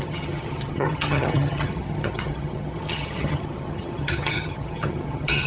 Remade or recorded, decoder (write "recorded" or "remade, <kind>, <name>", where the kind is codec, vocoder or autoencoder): remade, vocoder, HiFi-GAN